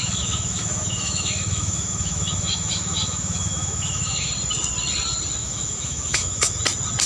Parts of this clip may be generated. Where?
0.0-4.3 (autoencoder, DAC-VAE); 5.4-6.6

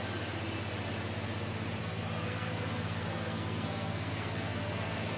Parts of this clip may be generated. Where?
1.8-5.2 (codec, SNAC)